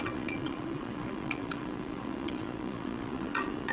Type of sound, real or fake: fake